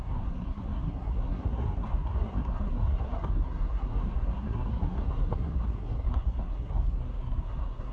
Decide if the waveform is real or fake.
fake